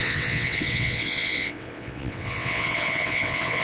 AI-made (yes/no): yes